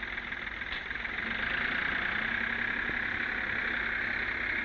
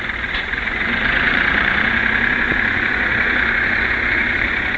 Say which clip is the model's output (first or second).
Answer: second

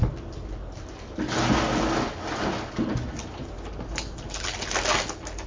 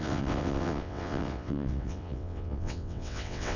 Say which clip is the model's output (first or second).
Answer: second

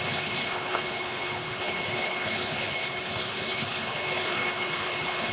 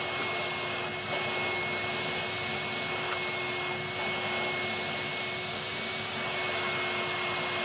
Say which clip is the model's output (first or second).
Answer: first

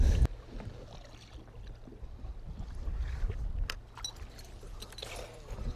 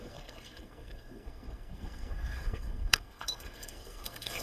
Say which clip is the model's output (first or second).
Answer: second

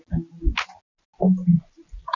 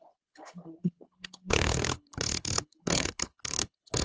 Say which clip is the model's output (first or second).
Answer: second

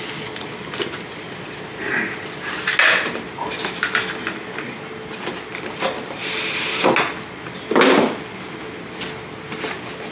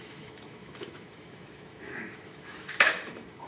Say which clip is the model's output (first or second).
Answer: second